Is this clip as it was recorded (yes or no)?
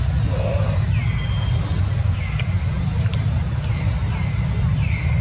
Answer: yes